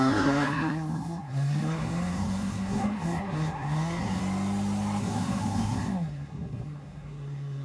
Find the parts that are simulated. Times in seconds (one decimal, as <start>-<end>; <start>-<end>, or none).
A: 0.0-4.2; 5.0-7.6